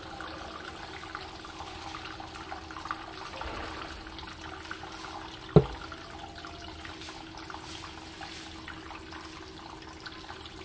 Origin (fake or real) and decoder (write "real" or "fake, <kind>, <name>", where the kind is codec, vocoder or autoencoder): real